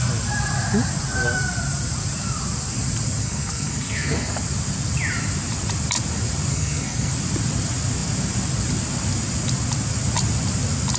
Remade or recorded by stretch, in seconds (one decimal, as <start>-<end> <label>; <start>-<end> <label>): 0.0-3.2 recorded; 3.2-4.4 remade; 4.4-6.5 recorded; 6.5-7.1 remade; 7.1-11.0 recorded